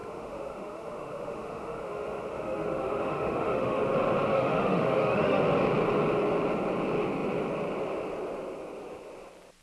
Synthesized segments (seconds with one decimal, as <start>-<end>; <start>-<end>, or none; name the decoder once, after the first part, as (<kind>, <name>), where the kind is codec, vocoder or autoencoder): 0.0-3.8 (autoencoder, DAC-VAE); 4.3-5.4